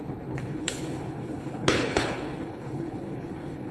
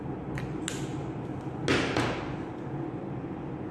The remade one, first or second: first